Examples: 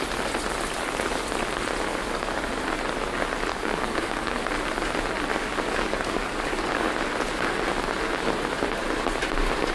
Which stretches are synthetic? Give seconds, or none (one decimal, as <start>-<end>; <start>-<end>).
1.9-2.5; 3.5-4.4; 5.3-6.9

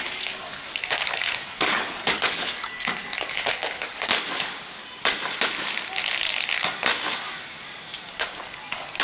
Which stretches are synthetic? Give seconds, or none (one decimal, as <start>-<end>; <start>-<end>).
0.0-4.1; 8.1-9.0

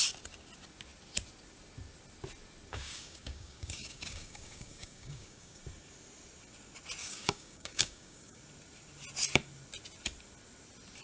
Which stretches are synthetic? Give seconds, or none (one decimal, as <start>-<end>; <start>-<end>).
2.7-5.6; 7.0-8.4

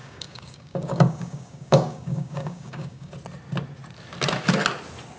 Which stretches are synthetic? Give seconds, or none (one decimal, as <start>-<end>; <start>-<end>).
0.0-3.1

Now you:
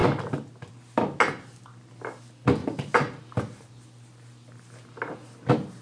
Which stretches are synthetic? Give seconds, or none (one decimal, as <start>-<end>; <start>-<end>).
none

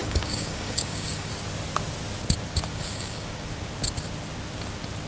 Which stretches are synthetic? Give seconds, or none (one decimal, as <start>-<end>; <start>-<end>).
0.0-1.3; 2.7-3.7